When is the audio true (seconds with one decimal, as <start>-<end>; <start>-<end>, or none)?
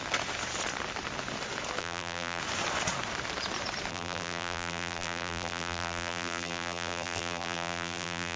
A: 0.0-1.8; 2.4-3.9